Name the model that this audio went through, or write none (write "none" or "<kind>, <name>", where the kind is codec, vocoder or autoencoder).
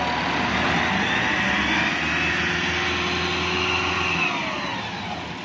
none